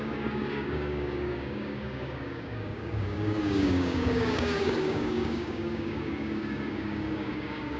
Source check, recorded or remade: remade